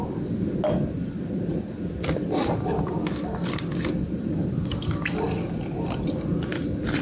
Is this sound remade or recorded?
recorded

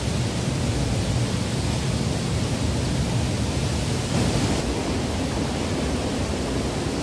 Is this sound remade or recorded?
recorded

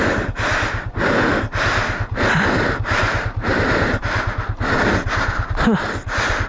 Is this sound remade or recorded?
recorded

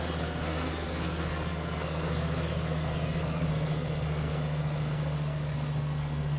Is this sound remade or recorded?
remade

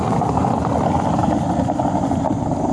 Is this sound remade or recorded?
recorded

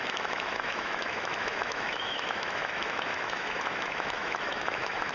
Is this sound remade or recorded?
remade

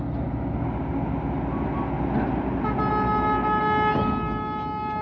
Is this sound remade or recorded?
recorded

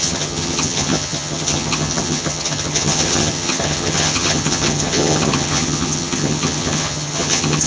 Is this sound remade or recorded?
remade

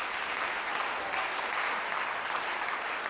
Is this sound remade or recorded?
recorded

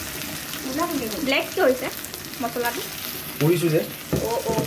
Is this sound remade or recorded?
recorded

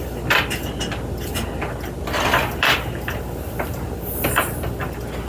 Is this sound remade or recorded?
recorded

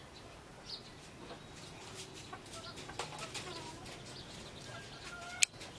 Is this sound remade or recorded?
recorded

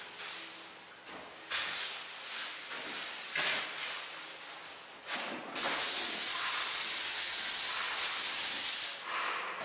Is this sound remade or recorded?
recorded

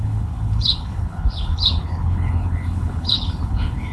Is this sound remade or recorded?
remade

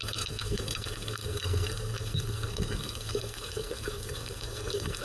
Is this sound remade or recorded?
remade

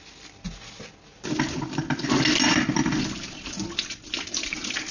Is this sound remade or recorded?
recorded